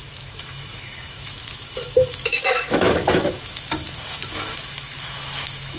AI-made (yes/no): yes